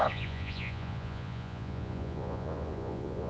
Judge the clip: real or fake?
fake